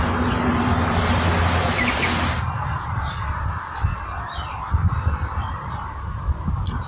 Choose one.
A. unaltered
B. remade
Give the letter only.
A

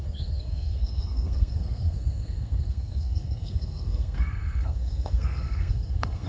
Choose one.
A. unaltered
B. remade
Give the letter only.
B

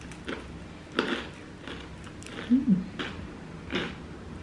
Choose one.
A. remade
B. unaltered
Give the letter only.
B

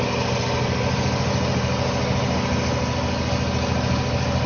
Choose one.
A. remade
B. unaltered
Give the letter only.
B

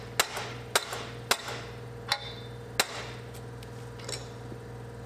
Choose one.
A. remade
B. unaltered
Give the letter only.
B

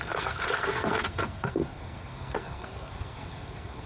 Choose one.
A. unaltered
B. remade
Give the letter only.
B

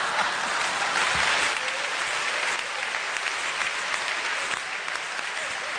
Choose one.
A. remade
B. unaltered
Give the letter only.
B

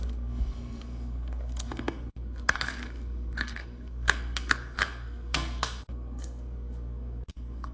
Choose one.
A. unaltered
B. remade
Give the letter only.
B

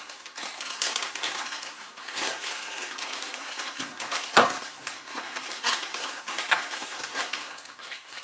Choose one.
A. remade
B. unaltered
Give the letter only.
A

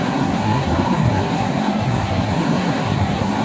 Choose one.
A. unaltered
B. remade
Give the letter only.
B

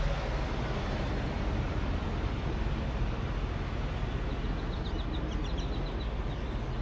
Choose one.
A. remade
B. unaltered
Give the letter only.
B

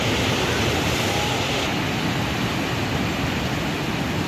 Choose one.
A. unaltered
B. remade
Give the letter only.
A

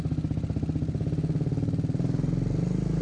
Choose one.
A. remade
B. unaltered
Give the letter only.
B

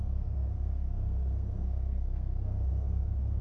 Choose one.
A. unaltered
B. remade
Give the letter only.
B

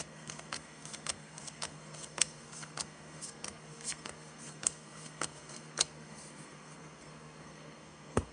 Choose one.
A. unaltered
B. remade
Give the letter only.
B